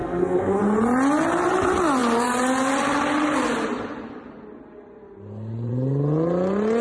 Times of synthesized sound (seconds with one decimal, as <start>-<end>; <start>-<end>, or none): 0.0-0.6